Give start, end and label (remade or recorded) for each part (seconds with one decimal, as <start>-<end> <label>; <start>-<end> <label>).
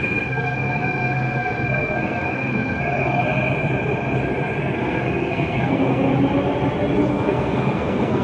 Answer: 0.0-3.2 remade; 3.2-4.6 recorded; 4.6-6.1 remade; 6.1-7.1 recorded; 7.1-8.2 remade